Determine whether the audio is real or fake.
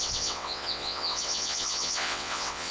fake